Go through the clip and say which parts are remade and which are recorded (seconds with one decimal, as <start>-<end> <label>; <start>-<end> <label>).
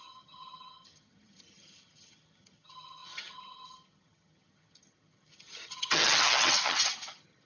0.0-7.5 remade